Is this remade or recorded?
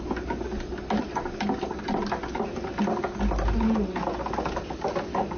recorded